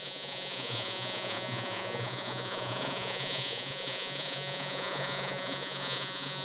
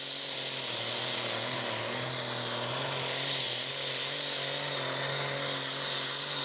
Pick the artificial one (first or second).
first